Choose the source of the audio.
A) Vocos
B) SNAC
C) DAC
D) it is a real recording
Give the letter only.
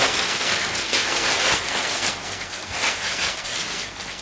B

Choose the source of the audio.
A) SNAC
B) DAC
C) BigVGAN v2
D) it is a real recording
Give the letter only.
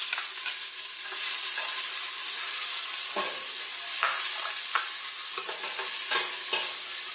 D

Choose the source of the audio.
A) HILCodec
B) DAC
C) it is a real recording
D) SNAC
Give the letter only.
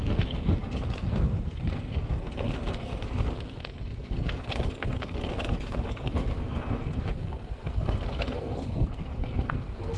D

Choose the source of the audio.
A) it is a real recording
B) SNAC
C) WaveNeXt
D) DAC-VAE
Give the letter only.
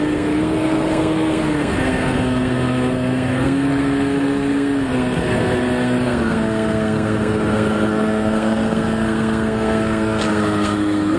B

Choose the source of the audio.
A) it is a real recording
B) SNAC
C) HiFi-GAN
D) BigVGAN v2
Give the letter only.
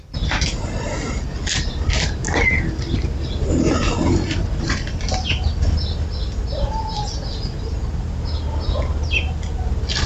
A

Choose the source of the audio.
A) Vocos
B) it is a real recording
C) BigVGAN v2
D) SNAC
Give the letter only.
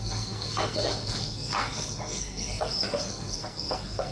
D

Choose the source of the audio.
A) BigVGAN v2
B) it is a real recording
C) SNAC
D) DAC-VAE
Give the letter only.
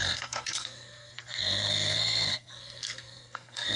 C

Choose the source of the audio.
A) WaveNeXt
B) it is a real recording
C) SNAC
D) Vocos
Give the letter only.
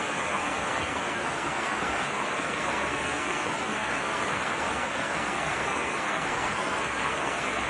C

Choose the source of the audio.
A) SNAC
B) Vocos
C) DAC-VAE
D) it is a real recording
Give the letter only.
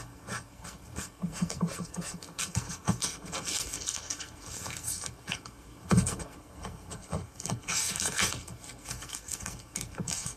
A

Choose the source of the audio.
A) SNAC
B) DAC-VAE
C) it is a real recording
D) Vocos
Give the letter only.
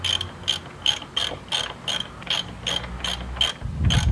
C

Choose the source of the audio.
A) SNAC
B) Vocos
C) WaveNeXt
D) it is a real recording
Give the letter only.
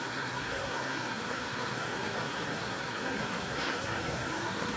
A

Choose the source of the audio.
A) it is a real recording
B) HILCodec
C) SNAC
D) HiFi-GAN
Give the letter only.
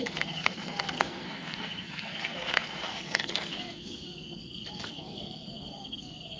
C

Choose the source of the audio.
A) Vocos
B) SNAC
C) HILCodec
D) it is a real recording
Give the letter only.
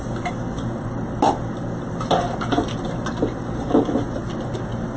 D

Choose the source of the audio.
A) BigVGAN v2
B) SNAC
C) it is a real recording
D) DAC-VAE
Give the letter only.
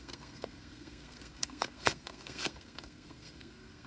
B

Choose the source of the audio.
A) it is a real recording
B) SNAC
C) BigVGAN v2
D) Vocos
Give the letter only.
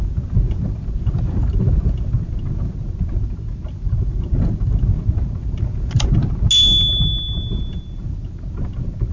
A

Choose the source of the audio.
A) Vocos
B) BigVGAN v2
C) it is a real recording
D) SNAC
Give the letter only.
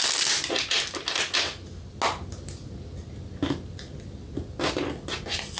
C